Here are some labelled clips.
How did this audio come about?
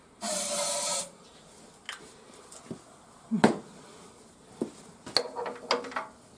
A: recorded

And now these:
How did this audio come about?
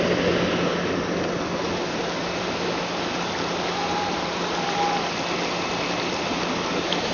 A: recorded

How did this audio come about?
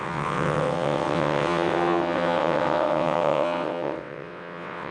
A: remade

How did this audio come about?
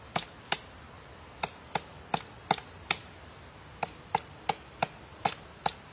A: recorded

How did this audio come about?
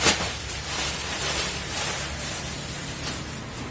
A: recorded